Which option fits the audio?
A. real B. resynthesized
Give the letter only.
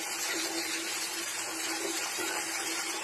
B